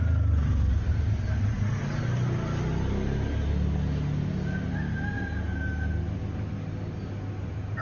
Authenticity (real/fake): real